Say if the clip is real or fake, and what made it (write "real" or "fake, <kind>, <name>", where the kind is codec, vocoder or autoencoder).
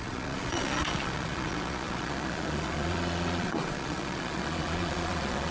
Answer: fake, vocoder, Vocos